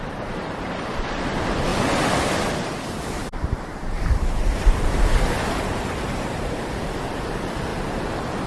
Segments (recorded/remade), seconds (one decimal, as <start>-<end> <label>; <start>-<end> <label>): 0.0-8.5 remade